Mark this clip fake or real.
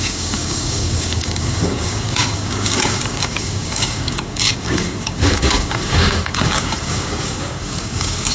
fake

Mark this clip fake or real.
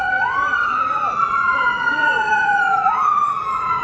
fake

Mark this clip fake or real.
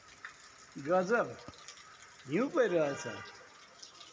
real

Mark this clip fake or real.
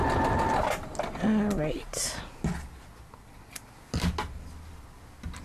real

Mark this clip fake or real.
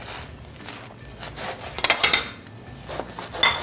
real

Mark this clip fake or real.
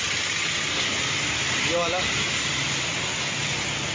real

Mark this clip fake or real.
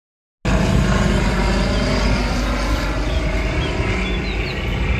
real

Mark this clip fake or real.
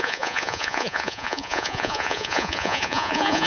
fake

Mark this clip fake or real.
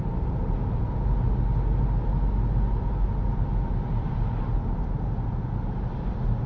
real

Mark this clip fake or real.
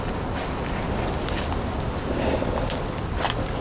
real